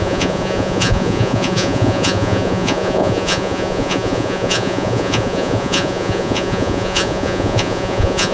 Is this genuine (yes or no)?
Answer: no